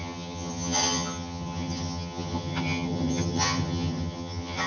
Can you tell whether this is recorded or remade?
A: remade